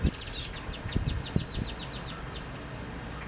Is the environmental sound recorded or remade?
recorded